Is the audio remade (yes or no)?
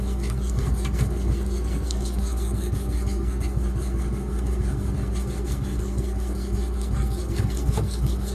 yes